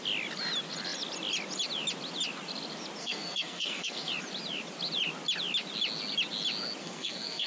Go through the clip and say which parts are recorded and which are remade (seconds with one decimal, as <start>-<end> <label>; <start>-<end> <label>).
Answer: 0.0-3.0 recorded; 3.0-4.1 remade; 4.1-6.8 recorded; 6.8-7.5 remade